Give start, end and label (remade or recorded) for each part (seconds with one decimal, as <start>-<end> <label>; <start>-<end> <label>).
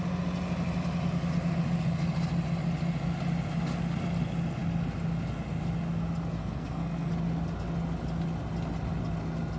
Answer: 0.0-6.4 recorded; 6.4-7.1 remade; 7.1-9.6 recorded